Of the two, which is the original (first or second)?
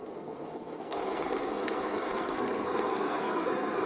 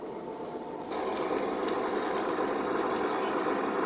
second